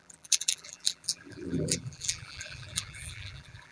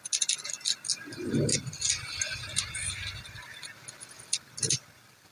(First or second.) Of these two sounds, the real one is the second